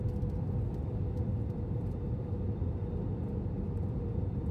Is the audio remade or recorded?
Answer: recorded